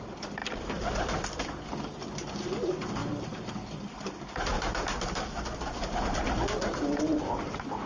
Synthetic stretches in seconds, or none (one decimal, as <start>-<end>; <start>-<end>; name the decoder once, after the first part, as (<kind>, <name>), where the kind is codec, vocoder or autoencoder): none